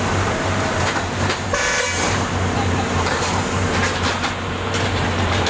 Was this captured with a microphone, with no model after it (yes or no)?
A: no